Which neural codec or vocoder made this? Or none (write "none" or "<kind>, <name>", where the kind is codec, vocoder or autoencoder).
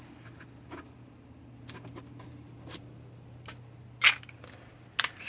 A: none